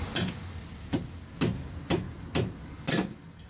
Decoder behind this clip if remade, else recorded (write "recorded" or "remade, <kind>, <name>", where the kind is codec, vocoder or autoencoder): recorded